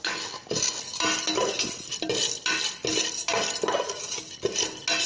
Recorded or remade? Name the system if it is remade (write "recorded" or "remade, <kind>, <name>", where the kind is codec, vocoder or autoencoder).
recorded